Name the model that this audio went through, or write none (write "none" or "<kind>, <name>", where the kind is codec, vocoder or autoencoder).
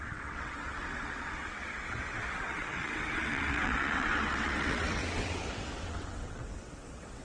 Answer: vocoder, WaveNeXt